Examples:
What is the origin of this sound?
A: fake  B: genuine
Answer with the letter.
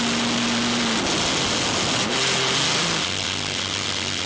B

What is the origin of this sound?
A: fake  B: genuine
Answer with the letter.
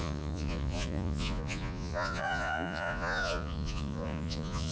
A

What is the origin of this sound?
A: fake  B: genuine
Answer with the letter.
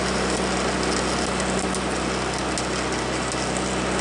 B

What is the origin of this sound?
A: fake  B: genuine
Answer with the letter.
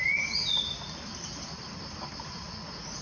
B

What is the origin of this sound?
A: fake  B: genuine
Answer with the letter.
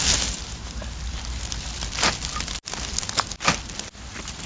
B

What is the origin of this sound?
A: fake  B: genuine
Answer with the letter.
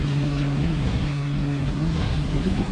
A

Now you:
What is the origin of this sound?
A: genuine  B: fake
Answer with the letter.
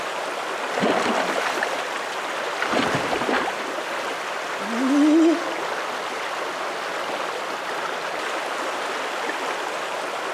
A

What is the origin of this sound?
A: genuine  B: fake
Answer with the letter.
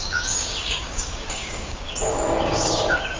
B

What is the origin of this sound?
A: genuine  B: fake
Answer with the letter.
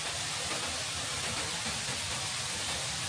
A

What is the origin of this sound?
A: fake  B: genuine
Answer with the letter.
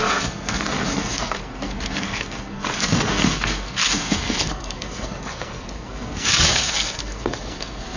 A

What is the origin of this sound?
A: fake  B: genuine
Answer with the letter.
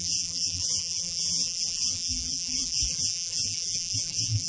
A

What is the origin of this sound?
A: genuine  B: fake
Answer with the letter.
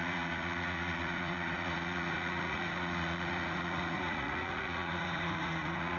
B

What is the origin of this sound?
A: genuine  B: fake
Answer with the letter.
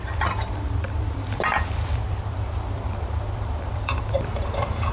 B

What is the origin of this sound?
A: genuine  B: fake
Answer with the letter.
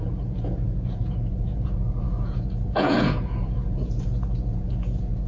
B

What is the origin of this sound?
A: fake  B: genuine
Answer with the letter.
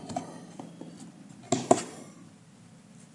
B